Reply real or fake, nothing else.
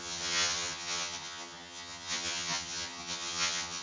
fake